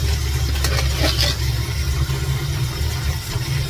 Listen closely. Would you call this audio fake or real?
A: real